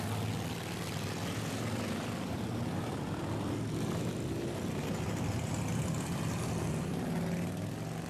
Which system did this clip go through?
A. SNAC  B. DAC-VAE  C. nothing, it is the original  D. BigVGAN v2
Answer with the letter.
C